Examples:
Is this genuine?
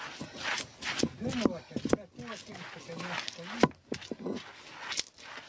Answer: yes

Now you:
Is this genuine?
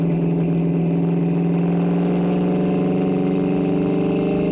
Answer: yes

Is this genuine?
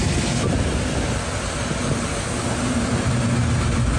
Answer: yes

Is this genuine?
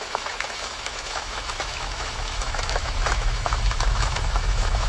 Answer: no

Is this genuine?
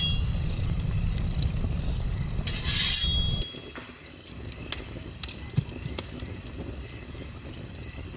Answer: yes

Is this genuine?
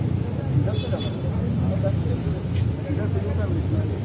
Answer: yes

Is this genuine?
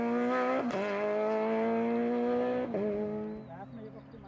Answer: yes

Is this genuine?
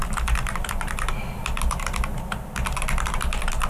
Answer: yes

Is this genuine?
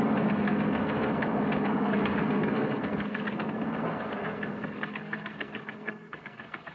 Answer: no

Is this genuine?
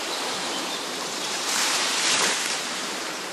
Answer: no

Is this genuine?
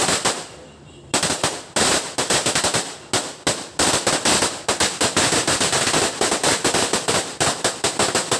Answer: yes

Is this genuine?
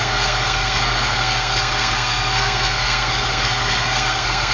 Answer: no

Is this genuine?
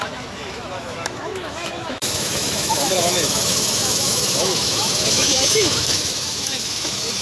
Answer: no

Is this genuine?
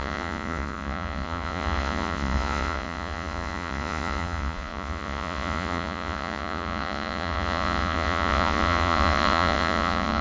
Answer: no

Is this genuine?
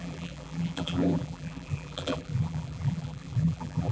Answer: no